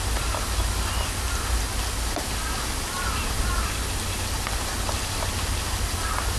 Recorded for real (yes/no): yes